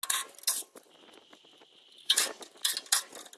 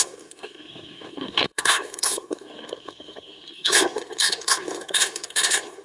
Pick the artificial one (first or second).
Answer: second